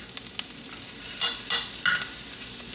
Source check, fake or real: real